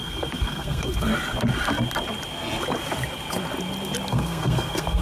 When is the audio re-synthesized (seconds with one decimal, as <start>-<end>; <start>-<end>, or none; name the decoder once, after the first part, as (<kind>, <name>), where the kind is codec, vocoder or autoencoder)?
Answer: 0.0-1.1 (codec, SNAC); 4.1-5.0